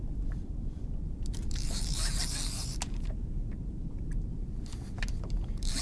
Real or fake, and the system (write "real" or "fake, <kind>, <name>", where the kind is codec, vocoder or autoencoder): fake, vocoder, BigVGAN v2